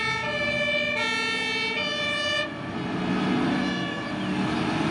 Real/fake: real